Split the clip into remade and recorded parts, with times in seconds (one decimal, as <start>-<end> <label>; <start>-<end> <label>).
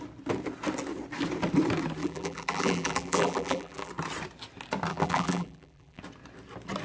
0.0-2.0 recorded; 2.0-3.9 remade; 3.9-4.9 recorded; 4.9-6.0 remade; 6.0-6.8 recorded